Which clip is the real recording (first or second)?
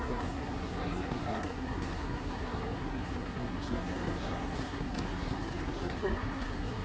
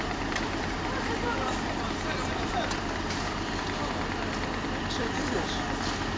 second